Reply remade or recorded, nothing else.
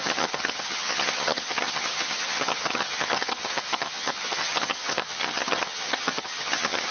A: remade